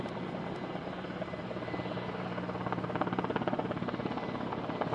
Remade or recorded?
recorded